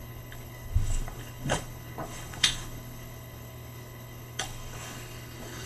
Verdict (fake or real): fake